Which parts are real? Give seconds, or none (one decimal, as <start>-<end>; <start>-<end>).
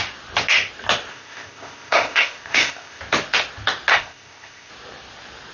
0.0-1.1; 3.0-3.9; 4.7-5.5